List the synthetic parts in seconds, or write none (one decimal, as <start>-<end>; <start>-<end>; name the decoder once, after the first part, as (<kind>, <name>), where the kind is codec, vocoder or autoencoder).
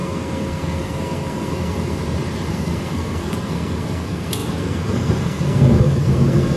0.0-2.0 (codec, SNAC); 2.5-6.6